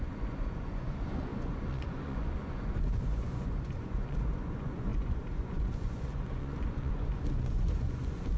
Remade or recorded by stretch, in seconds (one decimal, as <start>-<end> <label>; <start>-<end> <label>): 0.0-8.4 remade